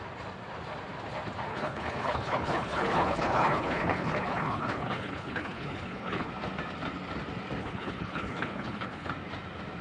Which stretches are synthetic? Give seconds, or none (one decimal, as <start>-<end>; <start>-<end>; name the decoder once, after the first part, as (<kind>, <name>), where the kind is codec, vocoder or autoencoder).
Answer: 1.5-6.3 (codec, HILCodec); 7.6-9.1